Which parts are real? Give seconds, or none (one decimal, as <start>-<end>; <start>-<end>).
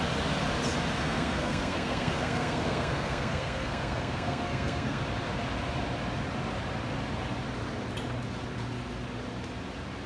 0.0-1.0; 5.0-10.1